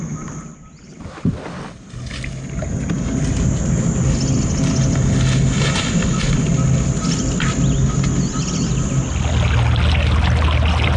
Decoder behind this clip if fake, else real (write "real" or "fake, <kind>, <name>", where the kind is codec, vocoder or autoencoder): real